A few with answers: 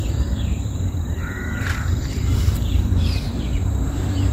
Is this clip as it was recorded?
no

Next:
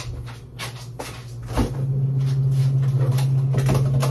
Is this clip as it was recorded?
yes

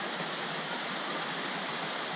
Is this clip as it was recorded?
no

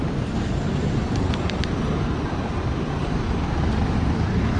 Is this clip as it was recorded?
no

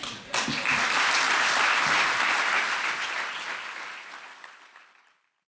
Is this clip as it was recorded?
no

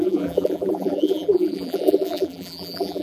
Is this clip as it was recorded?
no